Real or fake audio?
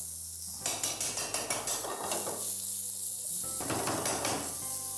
real